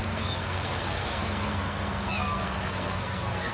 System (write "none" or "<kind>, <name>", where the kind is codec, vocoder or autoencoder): codec, SNAC